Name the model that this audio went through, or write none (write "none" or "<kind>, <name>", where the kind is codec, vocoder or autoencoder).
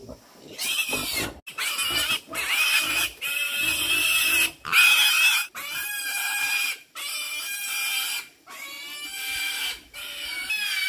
none